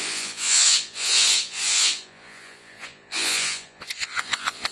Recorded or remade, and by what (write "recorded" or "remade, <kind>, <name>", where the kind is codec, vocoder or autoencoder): remade, vocoder, Vocos